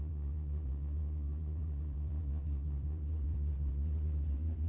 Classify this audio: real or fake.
fake